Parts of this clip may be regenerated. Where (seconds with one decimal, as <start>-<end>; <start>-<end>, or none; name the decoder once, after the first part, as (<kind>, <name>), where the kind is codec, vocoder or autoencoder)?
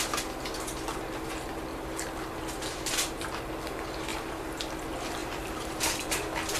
1.7-3.4 (vocoder, BigVGAN v2); 4.1-4.8; 5.2-6.0